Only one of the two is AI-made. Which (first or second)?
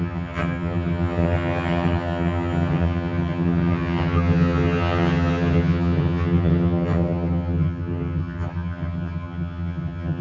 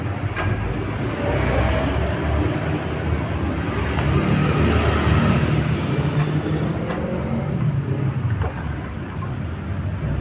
first